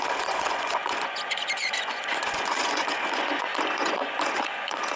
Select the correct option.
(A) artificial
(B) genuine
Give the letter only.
A